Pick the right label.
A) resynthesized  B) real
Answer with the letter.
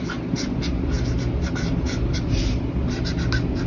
B